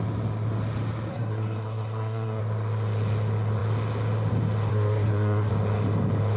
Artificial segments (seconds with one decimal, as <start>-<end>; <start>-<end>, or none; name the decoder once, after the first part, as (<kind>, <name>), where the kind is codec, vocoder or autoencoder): 1.1-2.4 (codec, SNAC); 4.7-5.5